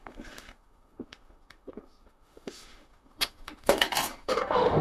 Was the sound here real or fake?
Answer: fake